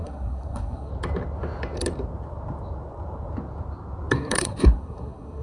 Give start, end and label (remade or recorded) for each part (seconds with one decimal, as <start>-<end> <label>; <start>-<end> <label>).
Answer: 0.0-0.9 remade; 0.9-4.1 recorded; 4.1-5.4 remade